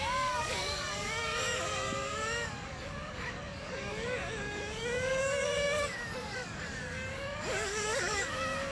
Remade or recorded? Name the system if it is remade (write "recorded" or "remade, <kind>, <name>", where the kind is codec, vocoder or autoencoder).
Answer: remade, codec, DAC